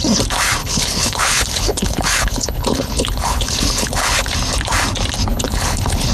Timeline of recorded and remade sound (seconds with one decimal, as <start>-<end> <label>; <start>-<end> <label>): 0.0-0.6 recorded; 0.6-4.3 remade; 4.3-5.3 recorded; 5.3-6.1 remade